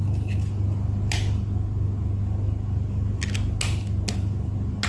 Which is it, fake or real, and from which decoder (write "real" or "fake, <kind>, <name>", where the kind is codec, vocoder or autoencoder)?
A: real